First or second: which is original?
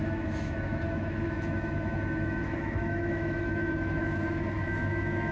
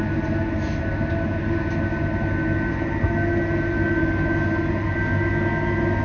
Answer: second